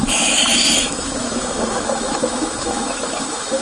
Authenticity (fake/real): fake